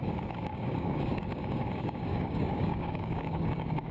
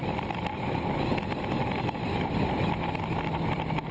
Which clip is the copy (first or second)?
first